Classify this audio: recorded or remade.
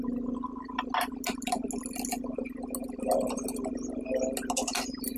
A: recorded